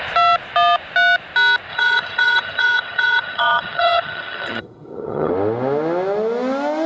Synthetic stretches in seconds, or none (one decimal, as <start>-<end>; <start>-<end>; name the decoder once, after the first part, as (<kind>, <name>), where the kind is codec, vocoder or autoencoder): 1.7-5.3 (vocoder, HiFi-GAN)